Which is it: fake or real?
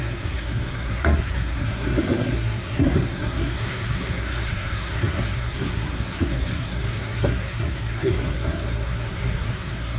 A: fake